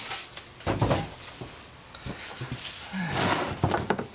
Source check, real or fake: fake